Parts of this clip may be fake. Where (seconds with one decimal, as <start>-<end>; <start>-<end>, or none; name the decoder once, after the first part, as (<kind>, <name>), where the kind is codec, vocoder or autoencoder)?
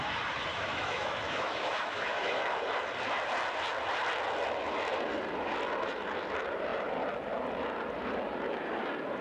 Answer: 0.5-2.6 (autoencoder, DAC-VAE)